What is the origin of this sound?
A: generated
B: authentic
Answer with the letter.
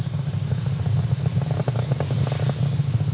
B